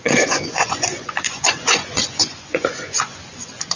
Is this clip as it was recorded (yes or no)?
no